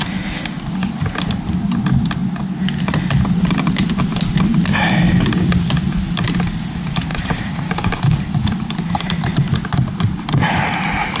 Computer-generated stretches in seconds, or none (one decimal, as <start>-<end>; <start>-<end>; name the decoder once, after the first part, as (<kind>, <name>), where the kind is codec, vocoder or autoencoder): 7.1-9.5 (vocoder, BigVGAN v2)